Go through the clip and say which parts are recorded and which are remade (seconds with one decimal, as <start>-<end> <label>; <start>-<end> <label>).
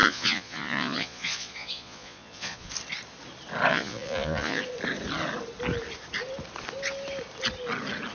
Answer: 0.0-2.7 remade; 2.7-3.7 recorded; 3.7-4.6 remade; 4.6-8.1 recorded